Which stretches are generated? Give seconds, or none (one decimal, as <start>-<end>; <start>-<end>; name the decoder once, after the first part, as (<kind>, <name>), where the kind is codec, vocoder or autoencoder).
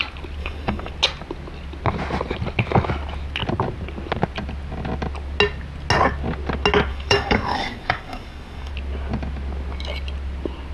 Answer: 0.4-0.9 (codec, DAC); 6.9-8.7